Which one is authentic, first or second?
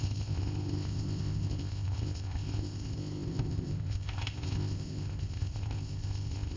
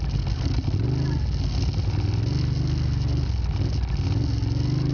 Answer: second